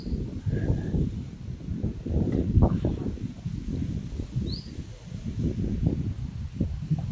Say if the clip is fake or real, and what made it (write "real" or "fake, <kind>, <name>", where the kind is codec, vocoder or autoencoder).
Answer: real